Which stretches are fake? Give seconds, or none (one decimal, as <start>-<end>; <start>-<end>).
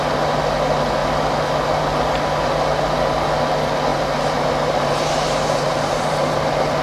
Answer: 3.9-6.3